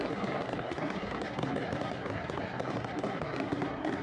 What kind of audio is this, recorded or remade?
remade